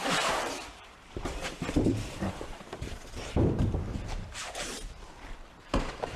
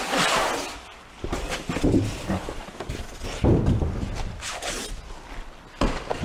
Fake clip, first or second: first